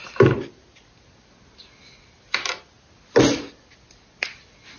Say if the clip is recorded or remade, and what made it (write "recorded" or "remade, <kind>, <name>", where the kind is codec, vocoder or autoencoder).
recorded